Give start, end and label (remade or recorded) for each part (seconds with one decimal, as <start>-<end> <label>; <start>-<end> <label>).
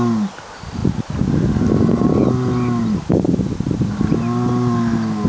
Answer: 0.0-5.3 recorded